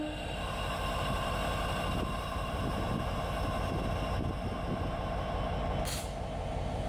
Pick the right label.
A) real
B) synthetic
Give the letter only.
A